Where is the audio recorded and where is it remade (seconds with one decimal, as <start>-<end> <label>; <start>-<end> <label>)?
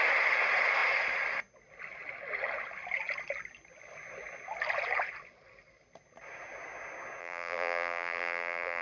0.0-7.2 recorded; 7.2-8.8 remade